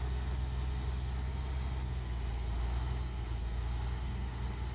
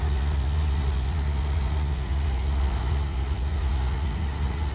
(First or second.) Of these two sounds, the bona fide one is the first